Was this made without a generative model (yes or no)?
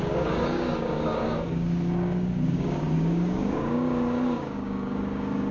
no